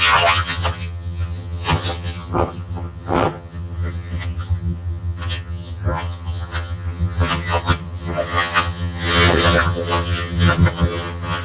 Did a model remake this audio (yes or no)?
yes